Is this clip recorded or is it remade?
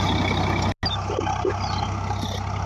recorded